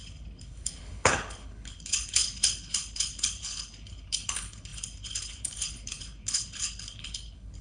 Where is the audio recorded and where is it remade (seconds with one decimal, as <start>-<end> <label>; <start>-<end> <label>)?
0.0-7.6 remade